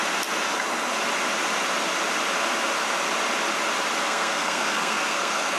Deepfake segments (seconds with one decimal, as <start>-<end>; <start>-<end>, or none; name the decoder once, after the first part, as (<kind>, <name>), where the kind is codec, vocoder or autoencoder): 4.0-5.6 (codec, SNAC)